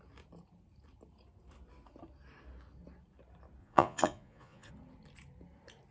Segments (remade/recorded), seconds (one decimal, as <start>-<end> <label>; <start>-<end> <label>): 0.0-3.6 recorded; 3.6-4.7 remade; 4.7-5.9 recorded